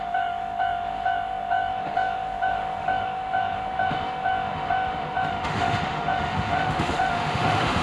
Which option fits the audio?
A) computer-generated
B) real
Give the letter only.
A